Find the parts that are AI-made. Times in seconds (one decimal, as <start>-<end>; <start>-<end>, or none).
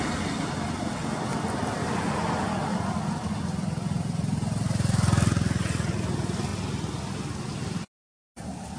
none